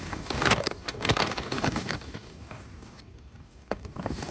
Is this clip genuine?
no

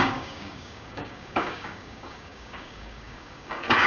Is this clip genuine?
no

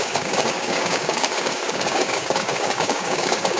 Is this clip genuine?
no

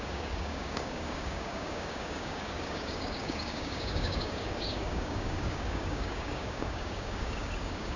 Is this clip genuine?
no